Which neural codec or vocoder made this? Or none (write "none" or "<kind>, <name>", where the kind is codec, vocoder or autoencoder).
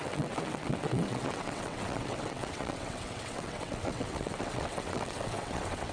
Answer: vocoder, WaveNeXt